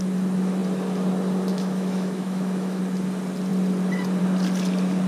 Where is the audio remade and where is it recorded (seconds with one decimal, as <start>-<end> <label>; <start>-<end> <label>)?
0.0-1.5 recorded; 1.5-2.8 remade; 2.8-5.1 recorded